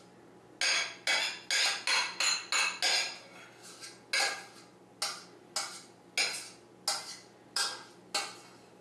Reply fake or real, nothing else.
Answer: real